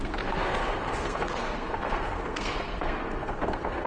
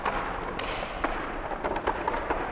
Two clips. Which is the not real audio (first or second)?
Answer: first